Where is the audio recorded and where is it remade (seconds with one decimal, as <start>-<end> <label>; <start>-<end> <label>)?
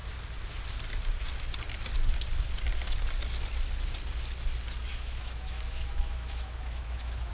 0.0-4.9 recorded; 4.9-7.3 remade